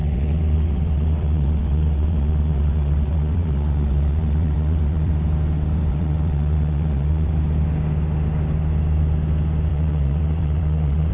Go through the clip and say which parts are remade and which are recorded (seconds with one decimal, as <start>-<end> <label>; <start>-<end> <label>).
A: 0.0-5.1 remade; 5.1-5.9 recorded; 5.9-7.3 remade; 7.3-9.7 recorded; 9.7-11.1 remade

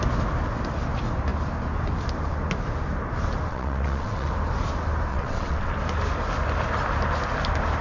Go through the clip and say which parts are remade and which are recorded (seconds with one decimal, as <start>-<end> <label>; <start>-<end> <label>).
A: 0.0-3.5 recorded; 3.5-4.3 remade; 4.3-5.1 recorded; 5.1-5.7 remade; 5.7-7.8 recorded

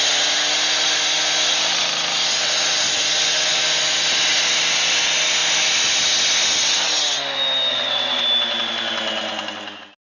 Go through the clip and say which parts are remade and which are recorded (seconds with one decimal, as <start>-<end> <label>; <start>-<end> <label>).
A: 0.0-7.7 recorded; 7.7-8.2 remade; 8.2-10.1 recorded

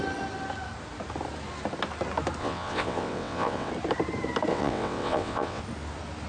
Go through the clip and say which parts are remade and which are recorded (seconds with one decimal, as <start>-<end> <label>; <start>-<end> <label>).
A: 0.0-2.4 recorded; 2.4-3.7 remade; 3.7-4.5 recorded; 4.5-5.6 remade; 5.6-6.3 recorded

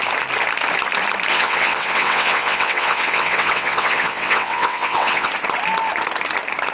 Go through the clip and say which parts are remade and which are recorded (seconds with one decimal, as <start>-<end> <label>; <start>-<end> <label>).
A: 0.0-1.3 recorded; 1.3-5.3 remade; 5.3-6.7 recorded